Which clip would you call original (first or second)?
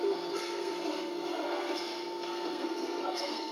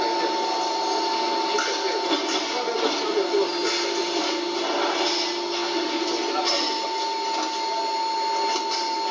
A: second